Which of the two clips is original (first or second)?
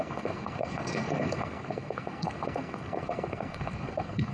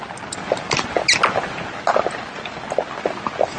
second